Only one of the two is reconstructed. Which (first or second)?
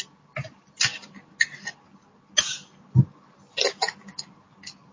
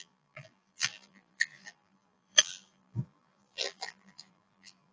second